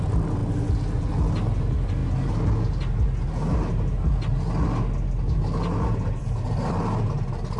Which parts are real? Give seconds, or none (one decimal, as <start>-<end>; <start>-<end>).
0.0-7.6